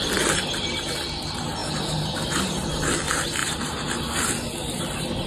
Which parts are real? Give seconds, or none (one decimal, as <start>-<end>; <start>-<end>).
0.0-1.6; 2.7-3.4; 3.9-5.3